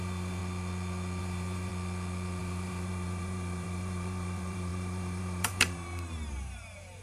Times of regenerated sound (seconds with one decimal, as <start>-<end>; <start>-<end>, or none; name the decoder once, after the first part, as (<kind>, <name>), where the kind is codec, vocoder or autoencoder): 0.0-0.4 (vocoder, BigVGAN v2); 1.2-1.7; 2.4-7.0